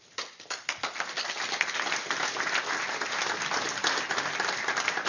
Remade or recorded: recorded